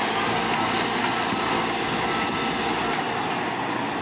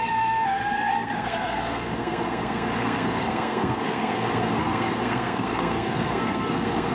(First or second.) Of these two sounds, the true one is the first